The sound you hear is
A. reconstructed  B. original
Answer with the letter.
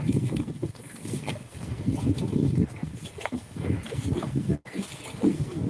A